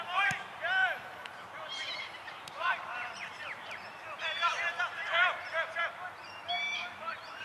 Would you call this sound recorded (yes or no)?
no